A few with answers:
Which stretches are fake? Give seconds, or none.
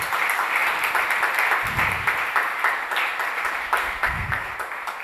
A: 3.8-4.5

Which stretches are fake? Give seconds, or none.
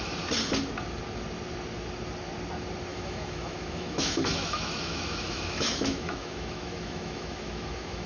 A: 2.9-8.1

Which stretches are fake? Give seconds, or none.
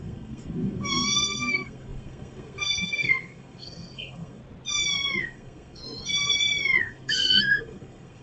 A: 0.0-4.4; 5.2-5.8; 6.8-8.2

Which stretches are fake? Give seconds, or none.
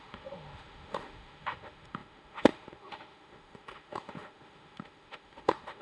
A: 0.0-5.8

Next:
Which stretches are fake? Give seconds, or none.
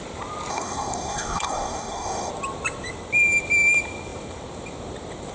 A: 0.5-2.3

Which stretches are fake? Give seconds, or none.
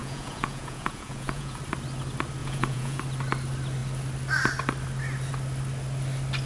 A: 0.0-1.6; 2.4-3.0